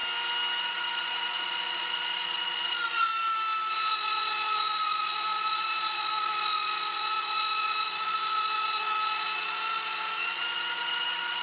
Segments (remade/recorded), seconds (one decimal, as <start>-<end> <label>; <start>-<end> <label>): 0.0-0.6 recorded; 0.6-3.1 remade; 3.1-3.7 recorded; 3.7-11.4 remade

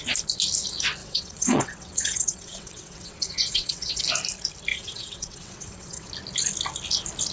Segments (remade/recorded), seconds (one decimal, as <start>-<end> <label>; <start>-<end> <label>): 0.0-1.0 recorded; 1.0-4.0 remade; 4.0-4.7 recorded; 4.7-6.1 remade; 6.1-7.3 recorded